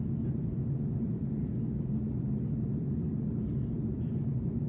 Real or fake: real